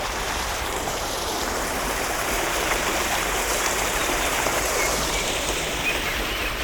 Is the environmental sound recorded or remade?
remade